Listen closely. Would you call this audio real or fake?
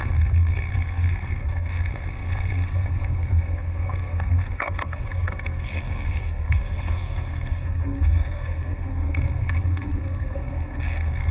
fake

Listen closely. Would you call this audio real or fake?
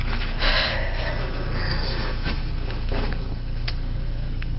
fake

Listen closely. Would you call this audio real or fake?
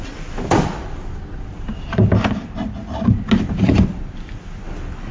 real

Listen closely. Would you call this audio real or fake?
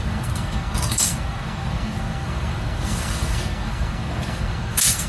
fake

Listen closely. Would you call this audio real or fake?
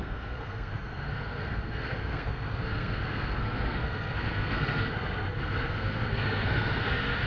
fake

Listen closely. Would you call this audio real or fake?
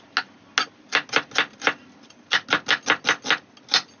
real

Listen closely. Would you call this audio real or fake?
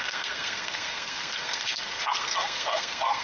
fake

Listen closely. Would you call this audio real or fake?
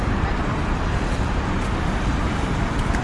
real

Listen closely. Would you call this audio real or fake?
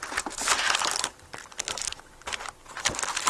real